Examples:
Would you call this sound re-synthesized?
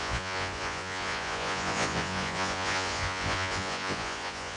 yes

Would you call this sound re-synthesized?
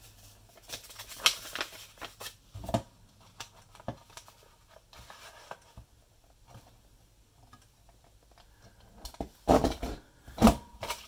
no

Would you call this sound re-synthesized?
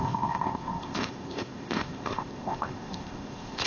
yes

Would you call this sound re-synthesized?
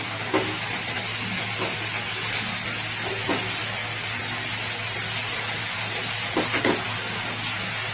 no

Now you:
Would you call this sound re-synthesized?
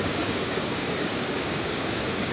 yes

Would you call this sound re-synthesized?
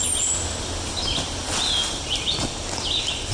no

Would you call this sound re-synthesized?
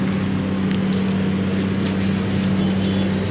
no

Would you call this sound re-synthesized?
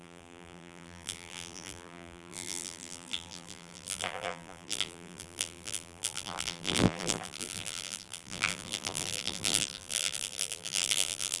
yes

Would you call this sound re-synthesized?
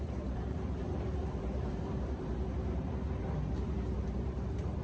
yes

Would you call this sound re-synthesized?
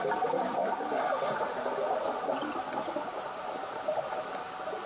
no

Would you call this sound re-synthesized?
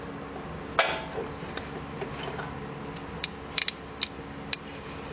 no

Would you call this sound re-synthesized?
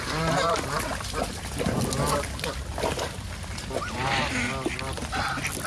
no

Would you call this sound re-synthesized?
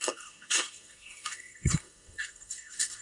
yes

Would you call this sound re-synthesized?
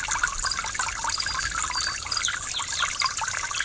no